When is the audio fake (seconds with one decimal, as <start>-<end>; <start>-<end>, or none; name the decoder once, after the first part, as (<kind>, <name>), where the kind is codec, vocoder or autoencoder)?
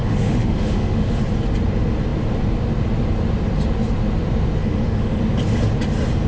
0.0-1.2 (autoencoder, DAC-VAE); 4.6-5.2